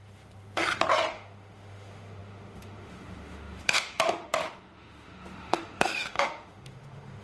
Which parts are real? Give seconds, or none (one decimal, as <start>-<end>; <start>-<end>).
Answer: 0.6-1.1